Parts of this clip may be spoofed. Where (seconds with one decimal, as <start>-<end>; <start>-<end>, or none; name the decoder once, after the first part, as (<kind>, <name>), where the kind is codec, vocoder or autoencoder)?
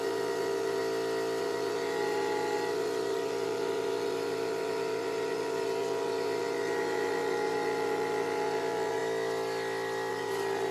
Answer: 0.0-0.8 (vocoder, BigVGAN v2); 1.4-9.0; 10.1-10.7